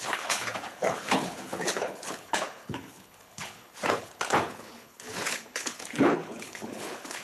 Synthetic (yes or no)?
yes